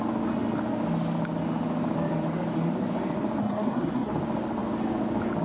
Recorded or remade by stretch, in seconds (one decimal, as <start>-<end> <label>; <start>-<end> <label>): 0.0-3.4 recorded; 3.4-4.1 remade; 4.1-5.4 recorded